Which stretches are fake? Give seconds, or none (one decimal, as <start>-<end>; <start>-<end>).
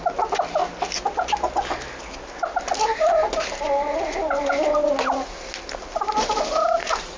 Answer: none